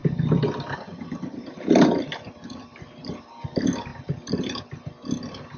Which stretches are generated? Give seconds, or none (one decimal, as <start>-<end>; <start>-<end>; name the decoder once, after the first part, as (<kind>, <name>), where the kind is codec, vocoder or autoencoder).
0.0-3.4 (vocoder, BigVGAN v2); 3.9-4.6